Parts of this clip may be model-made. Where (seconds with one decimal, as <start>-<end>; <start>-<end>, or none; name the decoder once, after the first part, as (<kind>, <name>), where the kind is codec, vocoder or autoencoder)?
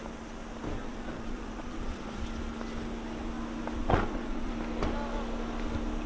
0.8-2.2 (vocoder, Vocos); 3.8-4.5